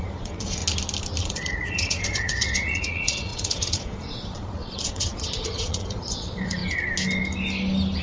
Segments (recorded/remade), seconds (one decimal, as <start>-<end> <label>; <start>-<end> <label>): 0.0-0.6 remade; 0.6-1.2 recorded; 1.2-6.6 remade; 6.6-8.0 recorded